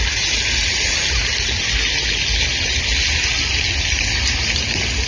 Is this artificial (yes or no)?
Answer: no